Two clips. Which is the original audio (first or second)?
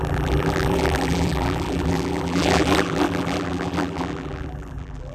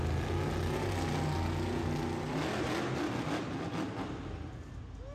second